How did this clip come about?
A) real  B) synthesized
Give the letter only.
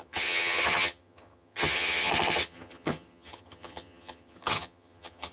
B